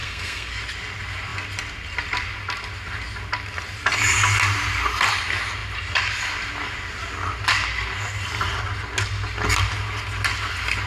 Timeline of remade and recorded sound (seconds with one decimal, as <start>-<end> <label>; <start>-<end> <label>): 0.0-0.5 remade; 0.5-10.9 recorded